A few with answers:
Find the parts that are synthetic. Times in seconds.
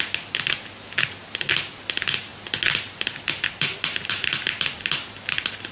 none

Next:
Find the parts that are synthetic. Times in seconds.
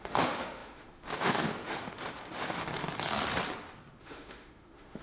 0.0-2.6 (autoencoder, DAC-VAE); 4.0-5.0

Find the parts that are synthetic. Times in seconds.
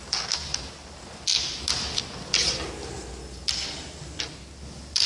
none